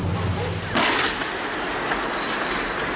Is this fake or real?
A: real